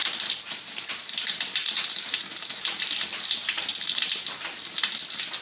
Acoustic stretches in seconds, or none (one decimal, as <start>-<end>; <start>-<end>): 0.9-1.6; 4.1-5.4